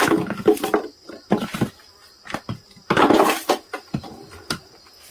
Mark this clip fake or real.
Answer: real